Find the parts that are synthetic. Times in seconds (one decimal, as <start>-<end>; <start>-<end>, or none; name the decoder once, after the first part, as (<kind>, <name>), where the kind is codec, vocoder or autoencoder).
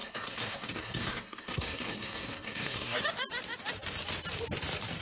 0.0-3.0 (codec, SNAC)